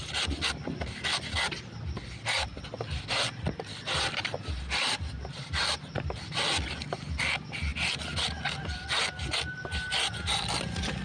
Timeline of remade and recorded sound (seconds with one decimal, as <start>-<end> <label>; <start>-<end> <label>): 0.0-11.0 recorded